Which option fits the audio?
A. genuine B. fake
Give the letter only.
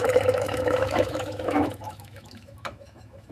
B